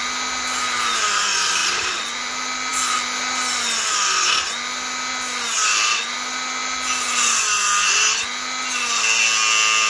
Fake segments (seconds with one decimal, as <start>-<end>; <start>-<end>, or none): none